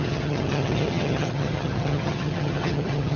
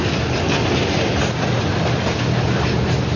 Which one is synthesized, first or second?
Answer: first